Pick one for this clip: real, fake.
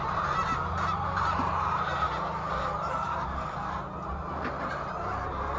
real